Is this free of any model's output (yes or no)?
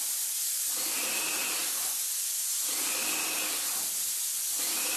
yes